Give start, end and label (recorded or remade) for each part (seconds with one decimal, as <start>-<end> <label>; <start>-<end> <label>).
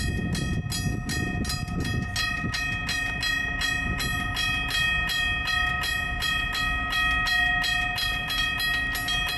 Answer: 0.0-9.4 recorded